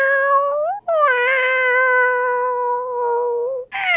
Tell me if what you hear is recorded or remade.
recorded